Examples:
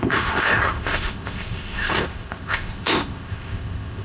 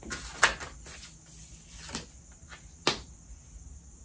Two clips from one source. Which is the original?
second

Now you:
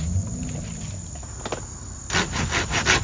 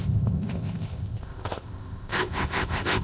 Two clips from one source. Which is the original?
first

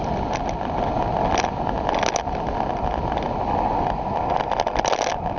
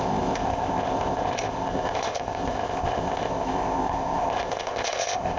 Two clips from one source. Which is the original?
first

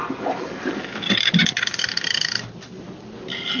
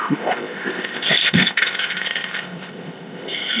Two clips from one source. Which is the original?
first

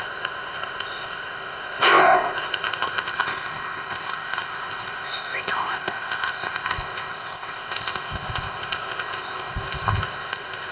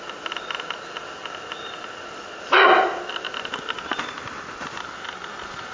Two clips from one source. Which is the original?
second